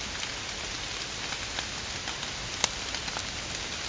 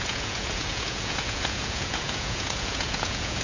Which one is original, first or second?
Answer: first